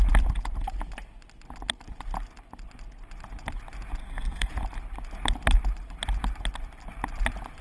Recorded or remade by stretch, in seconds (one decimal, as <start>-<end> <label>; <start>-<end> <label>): 0.0-4.0 recorded; 4.0-4.5 remade; 4.5-7.6 recorded